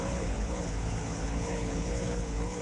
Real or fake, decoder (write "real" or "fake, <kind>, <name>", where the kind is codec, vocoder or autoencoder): fake, codec, HILCodec